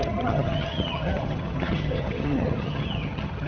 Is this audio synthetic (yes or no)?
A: yes